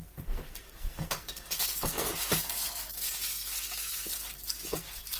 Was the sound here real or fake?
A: fake